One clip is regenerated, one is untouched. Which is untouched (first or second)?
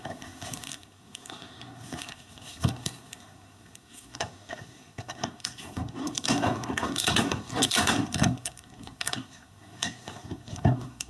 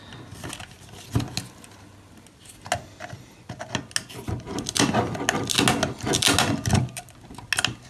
second